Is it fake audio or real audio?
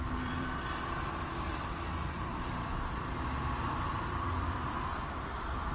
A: fake